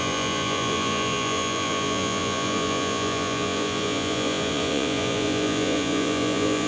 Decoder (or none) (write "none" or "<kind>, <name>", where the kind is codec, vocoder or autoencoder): vocoder, Vocos